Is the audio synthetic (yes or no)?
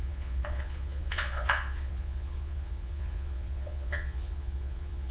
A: yes